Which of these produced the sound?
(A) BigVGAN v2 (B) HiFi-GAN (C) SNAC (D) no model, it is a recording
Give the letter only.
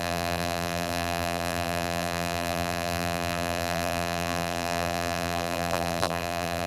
A